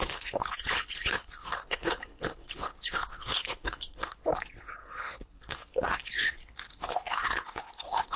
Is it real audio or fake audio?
fake